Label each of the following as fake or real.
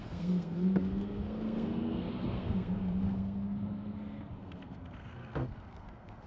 fake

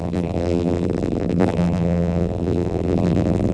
fake